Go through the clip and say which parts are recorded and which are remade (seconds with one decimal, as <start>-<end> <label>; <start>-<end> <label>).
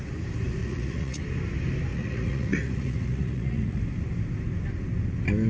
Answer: 0.0-0.6 recorded; 0.6-1.2 remade; 1.2-1.9 recorded; 1.9-3.8 remade; 3.8-5.5 recorded